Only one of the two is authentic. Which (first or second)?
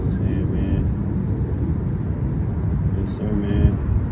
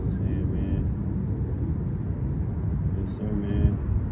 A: second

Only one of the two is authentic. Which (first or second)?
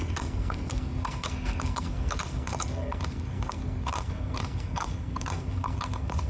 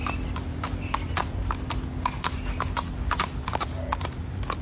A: second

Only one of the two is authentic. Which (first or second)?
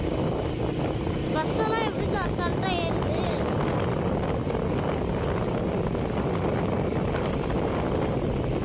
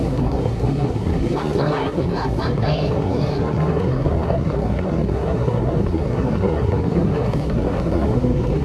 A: first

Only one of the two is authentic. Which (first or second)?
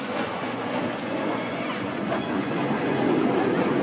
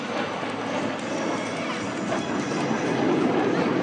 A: second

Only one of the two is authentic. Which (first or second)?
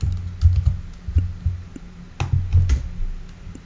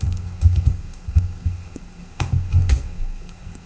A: first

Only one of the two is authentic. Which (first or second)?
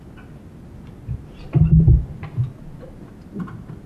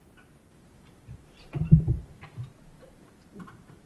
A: first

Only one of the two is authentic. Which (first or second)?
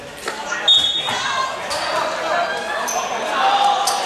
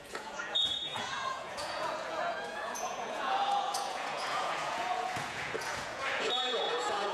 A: first